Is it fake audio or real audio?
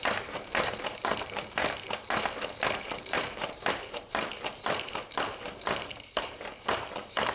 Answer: fake